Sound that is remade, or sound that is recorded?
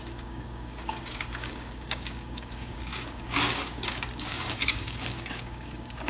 remade